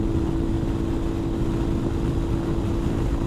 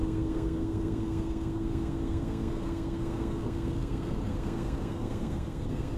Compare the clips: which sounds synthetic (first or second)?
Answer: second